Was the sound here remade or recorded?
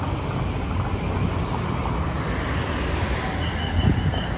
recorded